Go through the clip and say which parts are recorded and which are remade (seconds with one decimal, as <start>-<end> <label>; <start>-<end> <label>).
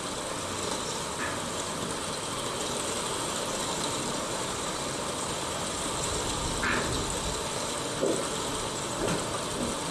0.0-3.6 recorded; 3.6-6.6 remade; 6.6-9.9 recorded